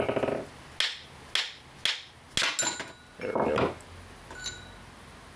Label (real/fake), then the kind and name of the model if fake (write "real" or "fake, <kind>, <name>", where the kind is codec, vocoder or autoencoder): real